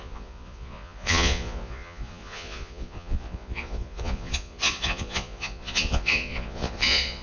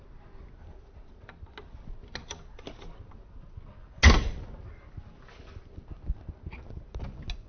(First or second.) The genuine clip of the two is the second